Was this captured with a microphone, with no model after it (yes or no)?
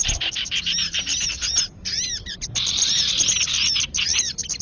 no